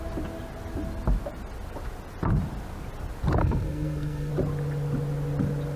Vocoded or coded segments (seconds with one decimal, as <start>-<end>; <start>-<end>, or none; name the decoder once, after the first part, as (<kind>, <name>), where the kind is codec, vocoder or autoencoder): 3.4-4.3 (codec, SNAC)